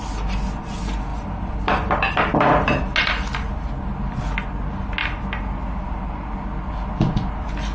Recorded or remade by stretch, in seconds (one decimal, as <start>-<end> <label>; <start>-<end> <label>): 0.0-7.7 recorded